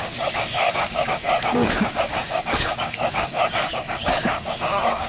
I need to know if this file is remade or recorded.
remade